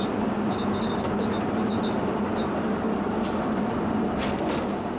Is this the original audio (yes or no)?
yes